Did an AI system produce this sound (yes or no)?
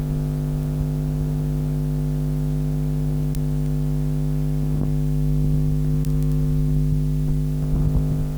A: no